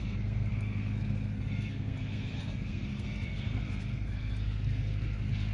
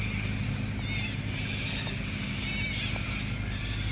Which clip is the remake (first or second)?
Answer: first